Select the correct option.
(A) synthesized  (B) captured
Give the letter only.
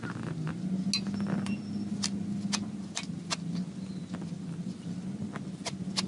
B